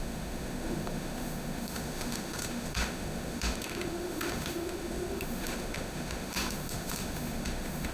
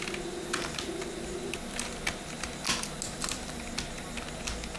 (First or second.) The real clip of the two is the second